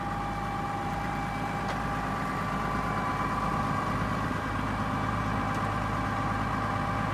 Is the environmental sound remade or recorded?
recorded